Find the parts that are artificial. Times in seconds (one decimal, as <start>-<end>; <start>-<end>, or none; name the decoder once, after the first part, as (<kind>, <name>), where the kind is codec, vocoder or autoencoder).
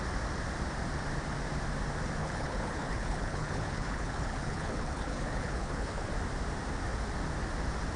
2.2-6.1 (codec, HILCodec)